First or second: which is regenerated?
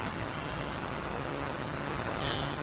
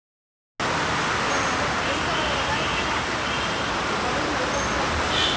first